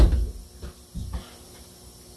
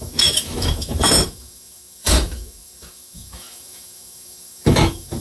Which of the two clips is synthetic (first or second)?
second